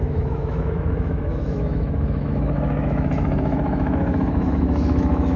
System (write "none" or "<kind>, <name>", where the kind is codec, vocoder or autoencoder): autoencoder, DAC-VAE